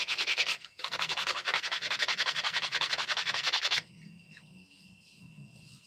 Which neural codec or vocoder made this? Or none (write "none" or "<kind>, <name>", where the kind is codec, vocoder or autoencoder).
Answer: codec, SNAC